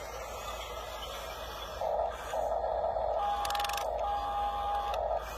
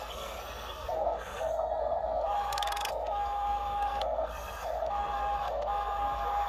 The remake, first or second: second